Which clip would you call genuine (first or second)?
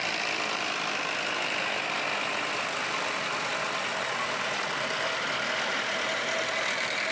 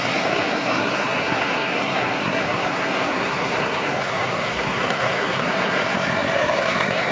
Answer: first